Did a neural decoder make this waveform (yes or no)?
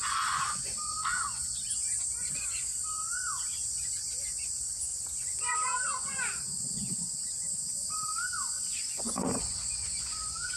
yes